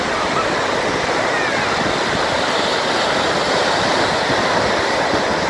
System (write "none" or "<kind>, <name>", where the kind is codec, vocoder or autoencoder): none